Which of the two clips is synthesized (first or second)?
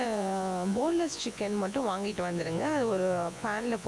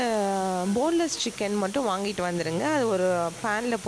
first